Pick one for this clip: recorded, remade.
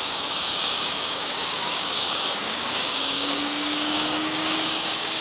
remade